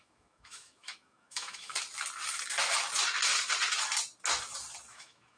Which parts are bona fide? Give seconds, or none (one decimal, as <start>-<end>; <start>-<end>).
1.7-4.9